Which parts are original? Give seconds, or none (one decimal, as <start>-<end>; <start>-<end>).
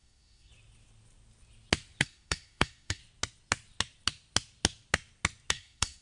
0.5-2.0; 3.0-5.5